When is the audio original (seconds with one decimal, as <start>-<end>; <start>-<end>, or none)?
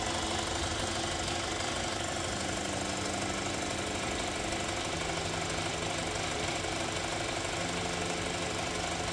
0.0-9.1